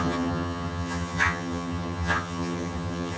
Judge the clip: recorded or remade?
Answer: remade